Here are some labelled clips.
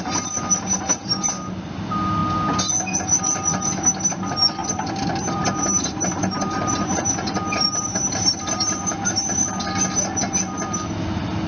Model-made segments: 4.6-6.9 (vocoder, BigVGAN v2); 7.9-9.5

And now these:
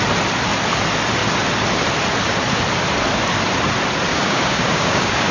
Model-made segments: 4.1-5.3 (codec, DAC)

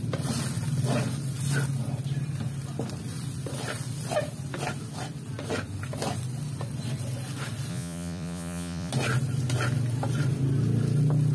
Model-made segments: 7.7-8.9 (vocoder, Vocos)

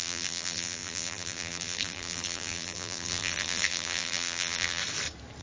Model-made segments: 0.0-4.8 (vocoder, BigVGAN v2)

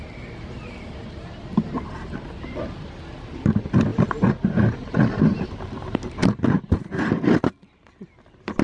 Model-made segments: 3.9-7.1 (vocoder, BigVGAN v2)

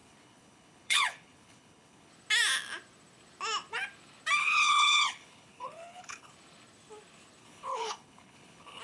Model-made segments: 0.0-2.1 (codec, HILCodec); 4.4-6.3; 7.4-8.8

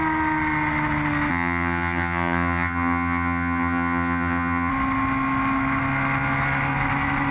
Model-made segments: 1.3-4.7 (vocoder, HiFi-GAN)